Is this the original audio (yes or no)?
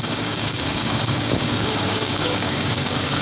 no